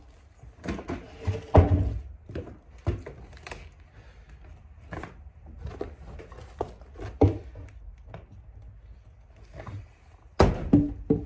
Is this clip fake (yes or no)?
no